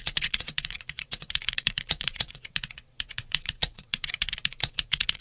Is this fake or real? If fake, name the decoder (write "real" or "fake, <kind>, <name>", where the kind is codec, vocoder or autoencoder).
fake, vocoder, WaveNeXt